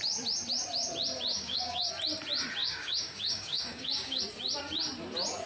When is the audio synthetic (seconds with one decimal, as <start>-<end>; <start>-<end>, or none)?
1.3-1.9; 2.6-4.2